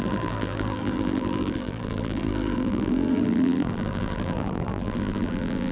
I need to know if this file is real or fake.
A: fake